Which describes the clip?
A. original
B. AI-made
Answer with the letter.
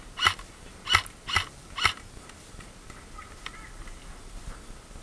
A